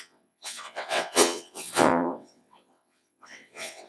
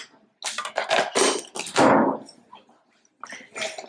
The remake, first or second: first